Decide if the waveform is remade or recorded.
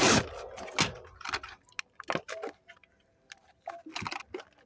recorded